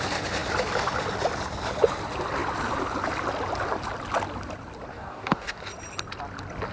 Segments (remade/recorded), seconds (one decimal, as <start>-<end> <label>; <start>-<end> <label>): 0.0-4.9 recorded; 4.9-5.6 remade; 5.6-6.7 recorded